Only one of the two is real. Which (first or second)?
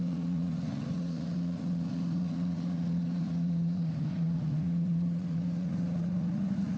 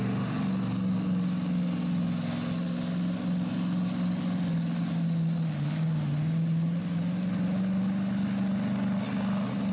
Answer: second